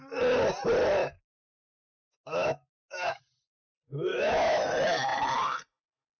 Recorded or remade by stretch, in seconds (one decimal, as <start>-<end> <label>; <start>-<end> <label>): 0.0-1.0 recorded; 1.0-3.2 remade; 3.2-4.1 recorded; 4.1-4.6 remade; 4.6-6.2 recorded